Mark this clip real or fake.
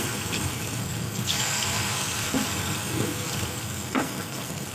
fake